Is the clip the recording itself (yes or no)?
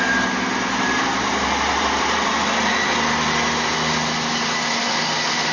yes